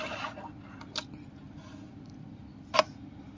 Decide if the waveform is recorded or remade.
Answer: recorded